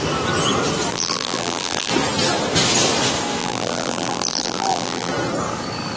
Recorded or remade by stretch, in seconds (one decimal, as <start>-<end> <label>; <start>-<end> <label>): 0.0-0.9 recorded; 0.9-1.9 remade; 1.9-3.4 recorded; 3.4-5.1 remade; 5.1-6.0 recorded